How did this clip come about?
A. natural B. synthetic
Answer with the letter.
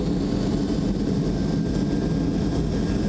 A